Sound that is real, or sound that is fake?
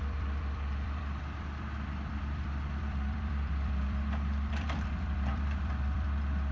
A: fake